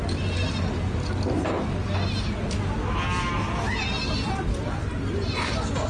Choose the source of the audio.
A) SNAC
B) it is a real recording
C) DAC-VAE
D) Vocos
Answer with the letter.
B